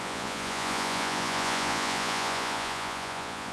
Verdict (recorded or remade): remade